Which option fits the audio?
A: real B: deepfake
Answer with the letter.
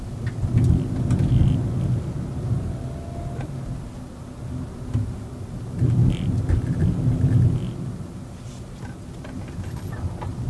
A